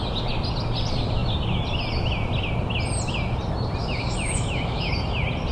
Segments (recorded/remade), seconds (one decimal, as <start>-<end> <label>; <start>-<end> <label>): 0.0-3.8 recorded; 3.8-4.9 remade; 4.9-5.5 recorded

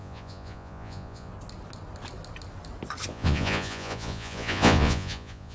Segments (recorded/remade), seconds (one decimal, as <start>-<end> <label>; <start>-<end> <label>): 0.0-1.3 remade; 1.3-3.1 recorded; 3.1-5.5 remade

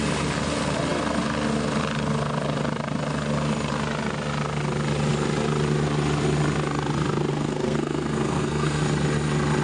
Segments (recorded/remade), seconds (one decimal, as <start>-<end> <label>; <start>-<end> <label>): 0.0-7.3 recorded; 7.3-8.8 remade; 8.8-9.6 recorded

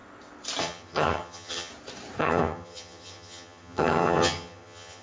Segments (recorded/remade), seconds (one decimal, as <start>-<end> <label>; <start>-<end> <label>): 0.0-0.6 recorded; 0.6-1.7 remade; 1.7-2.2 recorded; 2.2-5.0 remade

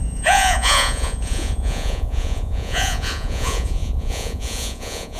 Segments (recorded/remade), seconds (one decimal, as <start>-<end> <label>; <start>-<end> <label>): 0.0-5.2 remade

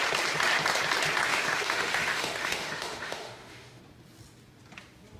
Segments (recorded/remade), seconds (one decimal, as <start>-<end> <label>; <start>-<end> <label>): 0.0-1.3 recorded; 1.3-3.8 remade; 3.8-5.2 recorded

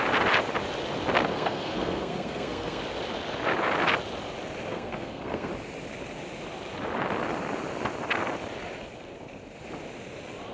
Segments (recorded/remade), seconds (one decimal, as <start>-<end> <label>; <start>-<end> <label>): 0.0-1.3 recorded; 1.3-2.8 remade; 2.8-4.7 recorded; 4.7-5.5 remade; 5.5-10.5 recorded

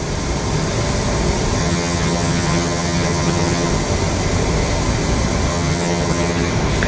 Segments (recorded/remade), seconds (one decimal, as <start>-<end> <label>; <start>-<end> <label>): 0.0-1.6 recorded; 1.6-3.7 remade; 3.7-5.5 recorded; 5.5-6.5 remade; 6.5-6.9 recorded